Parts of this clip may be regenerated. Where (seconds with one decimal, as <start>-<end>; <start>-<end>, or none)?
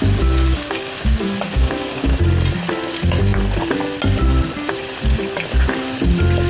0.5-2.2